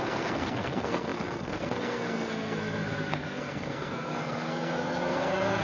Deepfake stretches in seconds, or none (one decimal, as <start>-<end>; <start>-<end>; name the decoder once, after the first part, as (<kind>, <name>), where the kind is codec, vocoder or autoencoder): 0.0-5.6 (codec, SNAC)